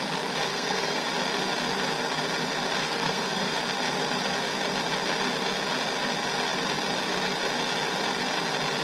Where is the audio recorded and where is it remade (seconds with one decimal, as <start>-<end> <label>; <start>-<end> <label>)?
0.0-0.5 recorded; 0.5-1.1 remade; 1.1-2.8 recorded; 2.8-3.5 remade; 3.5-8.8 recorded